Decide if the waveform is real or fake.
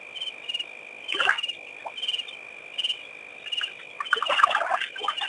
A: real